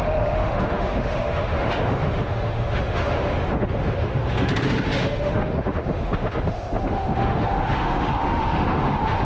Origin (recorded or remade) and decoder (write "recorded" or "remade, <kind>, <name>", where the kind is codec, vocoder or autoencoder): remade, autoencoder, DAC-VAE